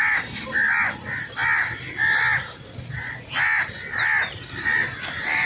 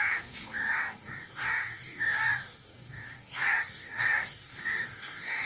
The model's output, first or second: second